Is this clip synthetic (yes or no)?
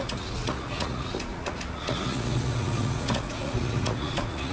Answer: yes